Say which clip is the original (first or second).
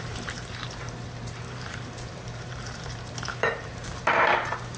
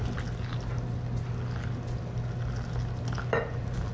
second